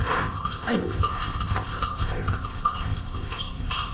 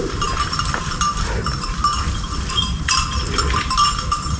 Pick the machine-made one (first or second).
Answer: first